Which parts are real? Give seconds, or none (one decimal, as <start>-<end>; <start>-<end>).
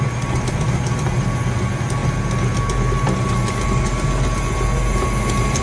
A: 0.0-5.6